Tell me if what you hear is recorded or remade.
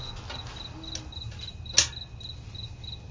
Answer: recorded